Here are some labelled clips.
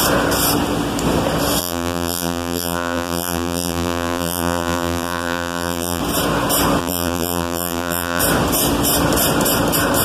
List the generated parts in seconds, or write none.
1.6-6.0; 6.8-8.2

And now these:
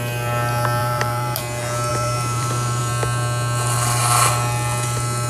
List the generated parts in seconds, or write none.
0.8-1.4; 1.9-2.8